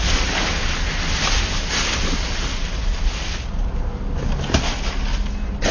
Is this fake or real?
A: real